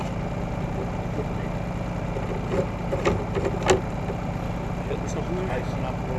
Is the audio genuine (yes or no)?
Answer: yes